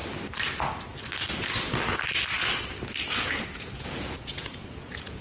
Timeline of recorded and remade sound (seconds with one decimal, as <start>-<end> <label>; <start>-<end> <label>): 0.0-3.1 recorded; 3.1-5.2 remade

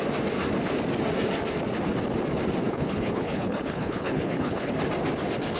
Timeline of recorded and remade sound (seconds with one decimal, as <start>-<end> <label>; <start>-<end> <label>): 0.0-2.6 recorded; 2.6-4.7 remade; 4.7-5.6 recorded

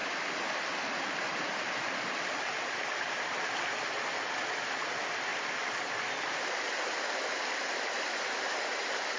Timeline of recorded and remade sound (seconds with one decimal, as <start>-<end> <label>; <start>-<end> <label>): 0.0-9.2 recorded

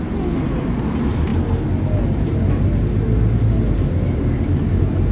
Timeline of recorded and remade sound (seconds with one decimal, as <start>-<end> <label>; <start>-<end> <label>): 0.0-5.1 recorded